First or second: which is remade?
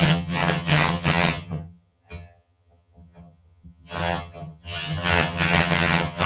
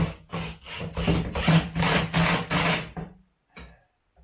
first